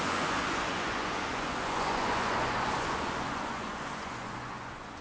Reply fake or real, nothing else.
fake